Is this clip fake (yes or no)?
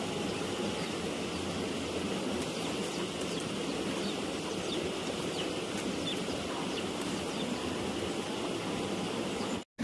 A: no